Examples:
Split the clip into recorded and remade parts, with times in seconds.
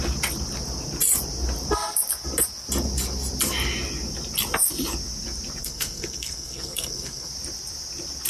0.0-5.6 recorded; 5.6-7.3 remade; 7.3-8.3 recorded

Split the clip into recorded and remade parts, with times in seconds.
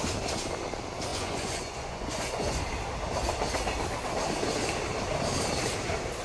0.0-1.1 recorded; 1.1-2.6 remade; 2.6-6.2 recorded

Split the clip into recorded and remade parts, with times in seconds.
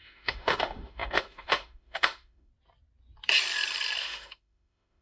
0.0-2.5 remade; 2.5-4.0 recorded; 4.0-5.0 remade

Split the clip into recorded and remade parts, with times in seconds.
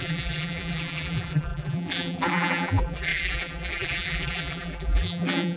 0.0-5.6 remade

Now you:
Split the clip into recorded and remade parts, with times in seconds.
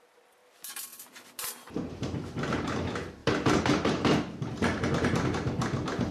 0.0-6.1 recorded